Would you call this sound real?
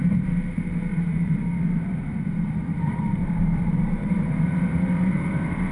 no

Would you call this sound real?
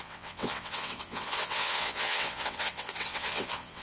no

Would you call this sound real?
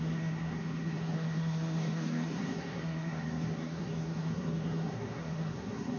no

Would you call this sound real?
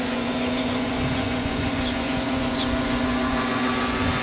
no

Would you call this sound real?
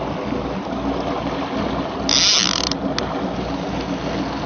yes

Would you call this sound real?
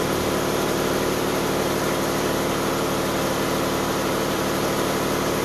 no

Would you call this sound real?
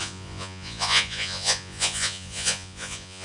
no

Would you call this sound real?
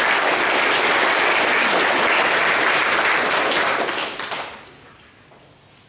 yes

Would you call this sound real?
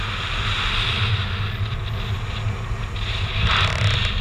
yes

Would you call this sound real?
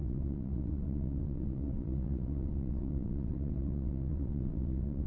no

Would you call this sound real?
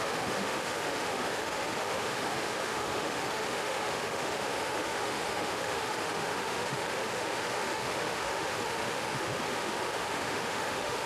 no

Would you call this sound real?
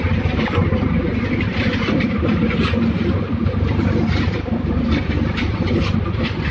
no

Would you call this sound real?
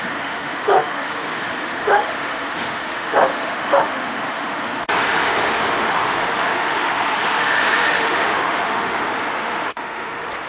no